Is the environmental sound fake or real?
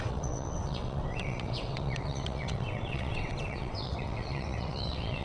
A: fake